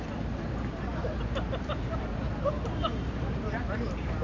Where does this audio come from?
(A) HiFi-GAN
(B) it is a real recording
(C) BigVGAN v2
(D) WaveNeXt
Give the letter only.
C